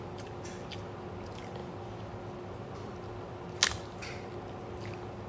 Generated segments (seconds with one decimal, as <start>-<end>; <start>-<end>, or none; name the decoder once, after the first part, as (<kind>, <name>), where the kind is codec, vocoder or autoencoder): none